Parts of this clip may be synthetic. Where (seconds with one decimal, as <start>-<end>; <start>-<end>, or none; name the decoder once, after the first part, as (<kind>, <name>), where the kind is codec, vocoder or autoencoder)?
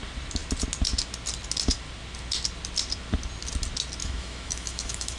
4.0-5.2 (autoencoder, DAC-VAE)